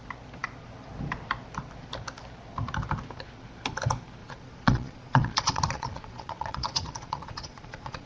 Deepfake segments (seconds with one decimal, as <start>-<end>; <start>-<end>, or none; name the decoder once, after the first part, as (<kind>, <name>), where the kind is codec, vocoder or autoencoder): 4.2-8.1 (vocoder, Vocos)